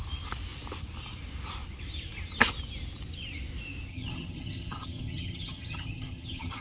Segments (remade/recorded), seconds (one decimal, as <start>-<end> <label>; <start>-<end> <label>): 0.0-3.9 recorded; 3.9-6.6 remade